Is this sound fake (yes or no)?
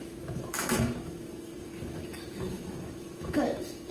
yes